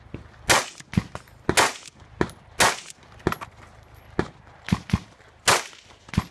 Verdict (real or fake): real